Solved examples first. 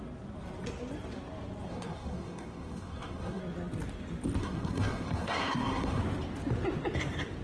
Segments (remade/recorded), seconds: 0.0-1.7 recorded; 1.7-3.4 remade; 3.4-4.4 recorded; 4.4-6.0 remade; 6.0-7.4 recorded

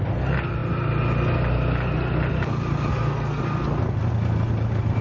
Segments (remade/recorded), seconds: 0.0-2.9 recorded; 2.9-3.4 remade; 3.4-5.0 recorded

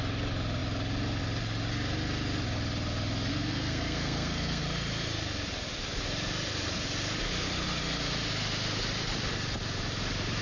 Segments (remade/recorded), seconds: 0.0-3.3 recorded; 3.3-4.6 remade; 4.6-10.4 recorded